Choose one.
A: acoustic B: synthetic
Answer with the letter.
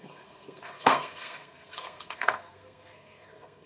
B